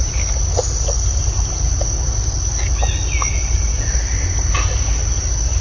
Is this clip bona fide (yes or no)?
yes